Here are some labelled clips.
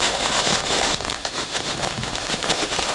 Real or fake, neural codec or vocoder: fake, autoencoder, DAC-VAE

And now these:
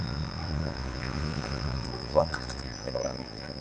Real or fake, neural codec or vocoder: fake, vocoder, Vocos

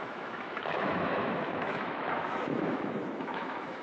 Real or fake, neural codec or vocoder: fake, autoencoder, DAC-VAE